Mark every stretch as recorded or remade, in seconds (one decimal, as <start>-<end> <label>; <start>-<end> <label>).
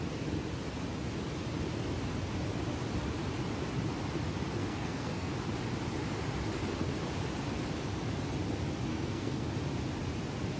0.0-4.6 recorded; 4.6-5.3 remade; 5.3-8.9 recorded; 8.9-9.5 remade; 9.5-10.6 recorded